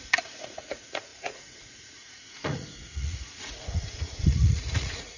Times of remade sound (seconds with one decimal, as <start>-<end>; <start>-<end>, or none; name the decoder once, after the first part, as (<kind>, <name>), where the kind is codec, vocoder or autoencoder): 0.0-5.2 (vocoder, Vocos)